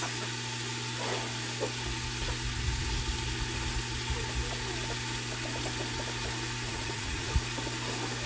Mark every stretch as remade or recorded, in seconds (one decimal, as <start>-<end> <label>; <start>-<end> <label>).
0.0-6.7 recorded; 6.7-7.3 remade; 7.3-8.3 recorded